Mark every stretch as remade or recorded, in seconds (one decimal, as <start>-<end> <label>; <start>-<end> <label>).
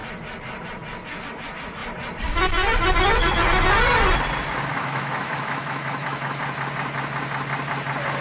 0.0-4.7 recorded; 4.7-6.4 remade; 6.4-8.2 recorded